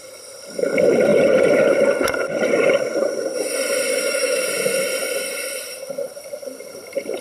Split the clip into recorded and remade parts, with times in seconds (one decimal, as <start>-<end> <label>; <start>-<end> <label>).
0.0-3.9 recorded; 3.9-4.5 remade; 4.5-7.2 recorded